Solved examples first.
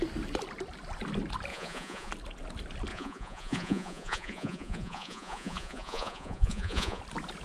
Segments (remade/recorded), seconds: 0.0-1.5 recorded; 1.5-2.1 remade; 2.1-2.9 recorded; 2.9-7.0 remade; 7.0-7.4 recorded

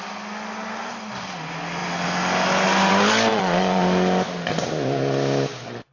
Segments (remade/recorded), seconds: 0.0-3.3 recorded; 3.3-3.8 remade; 3.8-5.9 recorded

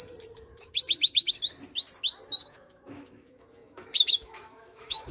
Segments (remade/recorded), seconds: 0.0-0.5 recorded; 0.5-1.3 remade; 1.3-2.4 recorded; 2.4-5.1 remade

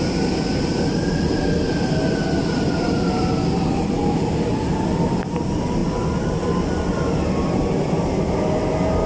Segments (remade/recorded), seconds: 0.0-9.1 recorded